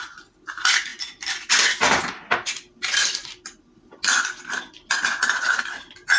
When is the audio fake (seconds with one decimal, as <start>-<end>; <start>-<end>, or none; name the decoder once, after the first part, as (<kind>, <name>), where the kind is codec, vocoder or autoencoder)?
none